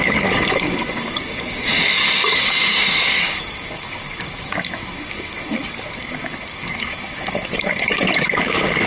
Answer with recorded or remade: remade